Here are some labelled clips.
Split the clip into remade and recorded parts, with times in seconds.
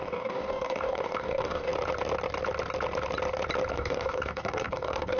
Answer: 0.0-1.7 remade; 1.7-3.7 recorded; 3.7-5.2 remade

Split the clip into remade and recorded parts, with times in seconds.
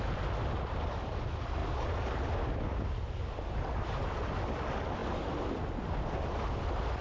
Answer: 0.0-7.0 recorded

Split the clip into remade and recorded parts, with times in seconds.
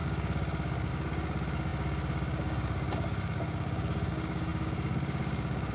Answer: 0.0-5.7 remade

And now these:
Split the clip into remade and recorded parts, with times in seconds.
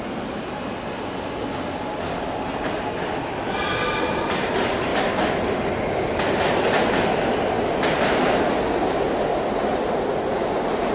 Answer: 0.0-10.9 recorded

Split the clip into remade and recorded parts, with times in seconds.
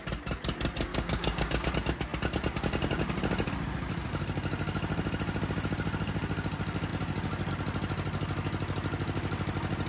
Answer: 0.0-0.9 recorded; 0.9-1.7 remade; 1.7-9.9 recorded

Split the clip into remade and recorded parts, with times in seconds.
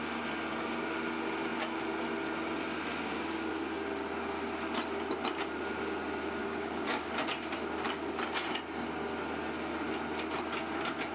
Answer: 0.0-6.4 recorded; 6.4-7.1 remade; 7.1-11.1 recorded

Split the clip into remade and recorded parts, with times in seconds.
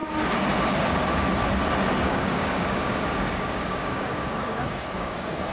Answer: 0.0-2.0 recorded; 2.0-5.5 remade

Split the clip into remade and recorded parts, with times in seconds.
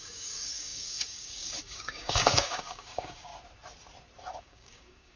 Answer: 0.0-3.3 remade; 3.3-4.4 recorded; 4.4-5.2 remade